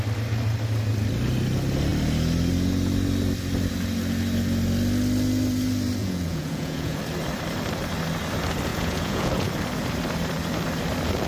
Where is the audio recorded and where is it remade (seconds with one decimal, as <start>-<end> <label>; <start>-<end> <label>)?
0.0-6.0 recorded; 6.0-7.0 remade; 7.0-8.7 recorded; 8.7-9.5 remade; 9.5-11.3 recorded